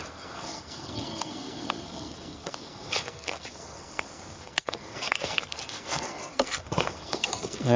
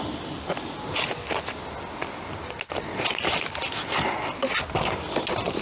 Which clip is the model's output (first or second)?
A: first